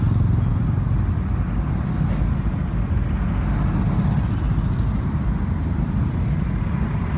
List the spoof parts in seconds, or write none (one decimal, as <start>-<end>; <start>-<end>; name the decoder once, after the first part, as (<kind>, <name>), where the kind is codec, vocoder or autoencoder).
none